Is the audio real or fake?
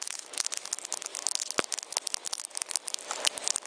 real